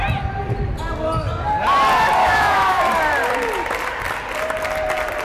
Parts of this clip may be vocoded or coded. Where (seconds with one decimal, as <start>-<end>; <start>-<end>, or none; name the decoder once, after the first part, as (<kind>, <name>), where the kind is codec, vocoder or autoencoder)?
2.2-2.8 (autoencoder, DAC-VAE)